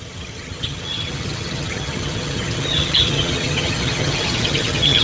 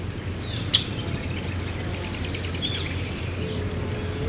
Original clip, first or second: second